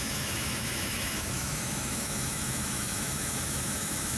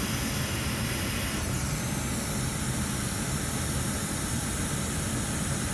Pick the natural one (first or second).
second